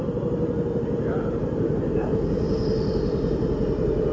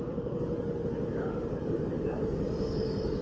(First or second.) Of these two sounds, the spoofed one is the second